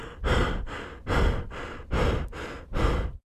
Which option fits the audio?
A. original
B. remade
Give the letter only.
A